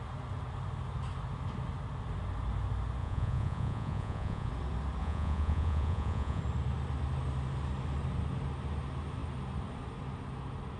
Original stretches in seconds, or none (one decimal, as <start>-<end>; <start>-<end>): 0.0-3.0; 4.5-5.0; 6.4-10.8